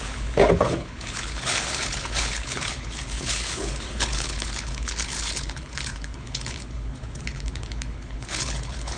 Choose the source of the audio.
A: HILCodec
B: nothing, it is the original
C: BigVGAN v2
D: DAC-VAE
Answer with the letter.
A